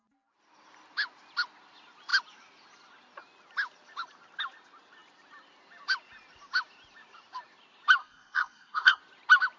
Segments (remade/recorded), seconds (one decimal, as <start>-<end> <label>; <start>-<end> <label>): 0.0-8.0 recorded; 8.0-9.0 remade; 9.0-9.6 recorded

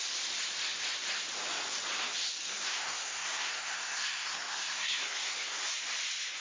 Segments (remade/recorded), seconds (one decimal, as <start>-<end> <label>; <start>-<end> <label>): 0.0-2.4 recorded; 2.4-5.8 remade; 5.8-6.4 recorded